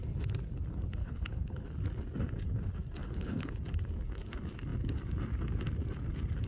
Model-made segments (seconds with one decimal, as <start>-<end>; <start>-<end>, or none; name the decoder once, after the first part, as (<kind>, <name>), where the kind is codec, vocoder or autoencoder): 1.0-1.7 (codec, HILCodec); 3.0-3.5